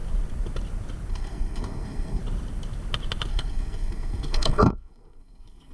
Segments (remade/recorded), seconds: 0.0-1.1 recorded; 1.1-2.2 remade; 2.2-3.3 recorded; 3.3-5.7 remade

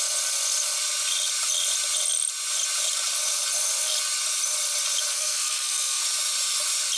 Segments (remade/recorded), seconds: 0.0-5.1 recorded; 5.1-6.0 remade; 6.0-7.0 recorded